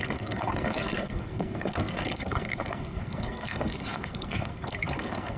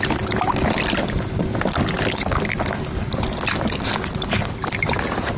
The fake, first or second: first